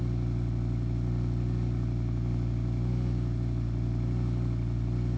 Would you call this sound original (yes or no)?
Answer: yes